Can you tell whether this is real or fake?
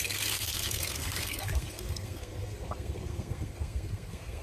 fake